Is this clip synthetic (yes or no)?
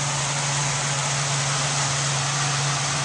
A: no